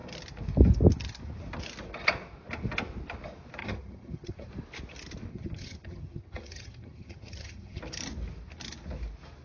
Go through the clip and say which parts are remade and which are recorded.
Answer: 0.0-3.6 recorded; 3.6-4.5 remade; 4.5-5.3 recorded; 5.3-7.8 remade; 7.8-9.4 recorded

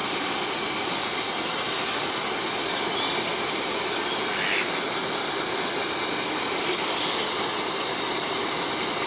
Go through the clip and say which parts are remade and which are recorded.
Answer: 0.0-9.1 recorded

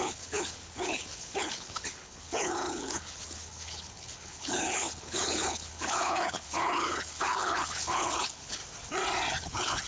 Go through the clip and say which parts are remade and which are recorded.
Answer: 0.0-8.6 remade; 8.6-9.4 recorded; 9.4-9.9 remade

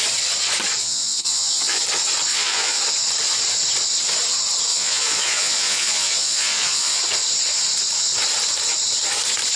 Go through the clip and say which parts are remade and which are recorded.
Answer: 0.0-0.8 recorded; 0.8-1.8 remade; 1.8-2.3 recorded; 2.3-2.8 remade; 2.8-4.7 recorded; 4.7-7.0 remade; 7.0-9.6 recorded

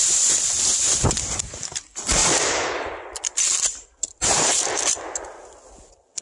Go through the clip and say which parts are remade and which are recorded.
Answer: 0.0-2.2 recorded; 2.2-6.2 remade